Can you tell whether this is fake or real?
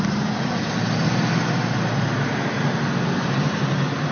real